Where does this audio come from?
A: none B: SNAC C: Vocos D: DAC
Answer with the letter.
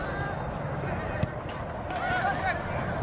A